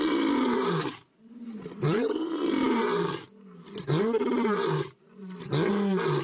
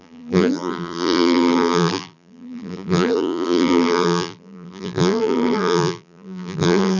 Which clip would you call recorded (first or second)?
first